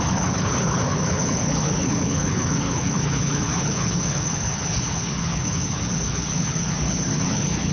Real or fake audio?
fake